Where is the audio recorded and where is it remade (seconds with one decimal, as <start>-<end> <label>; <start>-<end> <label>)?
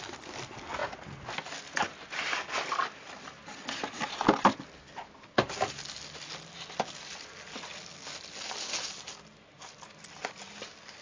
0.0-11.0 recorded